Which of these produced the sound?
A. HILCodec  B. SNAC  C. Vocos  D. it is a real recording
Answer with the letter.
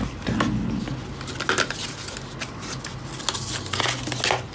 D